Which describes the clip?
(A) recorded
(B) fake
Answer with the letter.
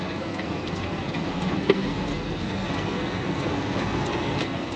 B